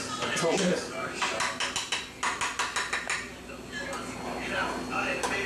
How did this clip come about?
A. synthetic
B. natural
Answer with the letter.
B